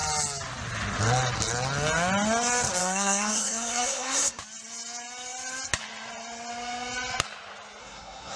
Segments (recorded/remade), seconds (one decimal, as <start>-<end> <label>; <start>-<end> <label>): 0.0-2.8 recorded; 2.8-4.4 remade; 4.4-7.8 recorded; 7.8-8.4 remade